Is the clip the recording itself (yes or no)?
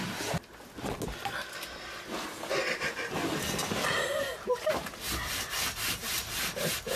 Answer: yes